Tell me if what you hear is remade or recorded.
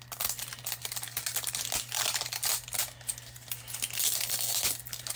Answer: recorded